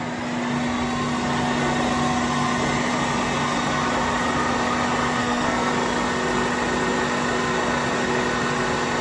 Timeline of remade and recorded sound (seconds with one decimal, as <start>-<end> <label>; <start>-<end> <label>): 0.0-5.2 recorded; 5.2-5.7 remade; 5.7-9.0 recorded